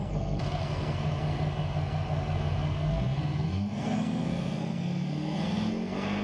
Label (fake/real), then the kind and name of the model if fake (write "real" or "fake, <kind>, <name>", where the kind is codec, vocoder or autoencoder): fake, codec, SNAC